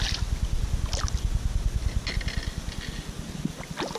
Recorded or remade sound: recorded